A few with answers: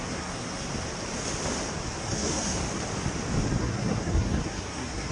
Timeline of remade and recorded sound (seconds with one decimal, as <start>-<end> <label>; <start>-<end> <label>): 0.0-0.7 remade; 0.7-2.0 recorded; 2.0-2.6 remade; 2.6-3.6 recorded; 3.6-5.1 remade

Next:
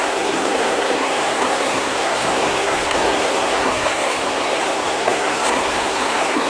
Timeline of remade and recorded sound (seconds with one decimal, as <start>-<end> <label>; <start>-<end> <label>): 0.0-6.5 remade

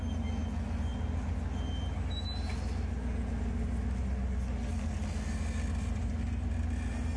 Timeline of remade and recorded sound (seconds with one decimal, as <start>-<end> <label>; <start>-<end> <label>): 0.0-7.2 recorded